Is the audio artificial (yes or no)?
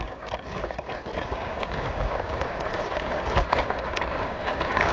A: yes